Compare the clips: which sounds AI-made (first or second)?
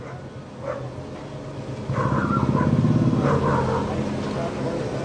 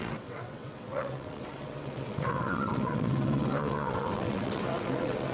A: second